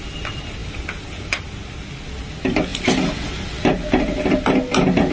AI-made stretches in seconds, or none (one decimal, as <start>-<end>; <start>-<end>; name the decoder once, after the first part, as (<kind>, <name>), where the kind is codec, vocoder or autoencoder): none